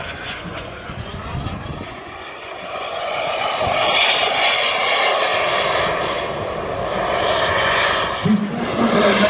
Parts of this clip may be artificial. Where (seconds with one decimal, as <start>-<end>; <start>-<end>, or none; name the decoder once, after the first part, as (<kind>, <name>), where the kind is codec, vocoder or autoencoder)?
0.0-3.5 (vocoder, Vocos); 4.2-4.7; 7.5-8.0